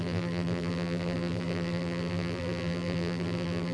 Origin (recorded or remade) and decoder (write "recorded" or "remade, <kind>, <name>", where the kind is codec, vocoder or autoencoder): remade, vocoder, BigVGAN v2